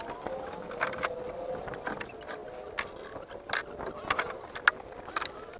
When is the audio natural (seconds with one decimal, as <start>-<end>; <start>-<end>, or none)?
0.0-5.6